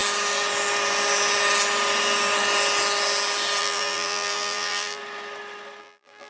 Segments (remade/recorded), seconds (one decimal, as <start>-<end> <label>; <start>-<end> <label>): 0.0-3.6 recorded; 3.6-5.0 remade; 5.0-5.8 recorded; 5.8-6.3 remade